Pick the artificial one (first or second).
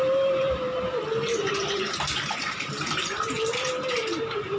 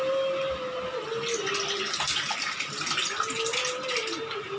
first